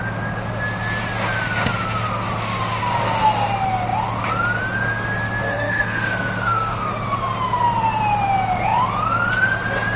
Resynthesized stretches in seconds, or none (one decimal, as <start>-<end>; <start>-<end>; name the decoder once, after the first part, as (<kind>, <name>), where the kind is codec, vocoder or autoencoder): 5.5-6.9 (codec, SNAC)